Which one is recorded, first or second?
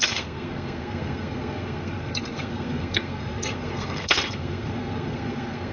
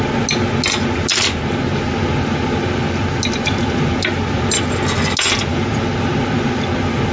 second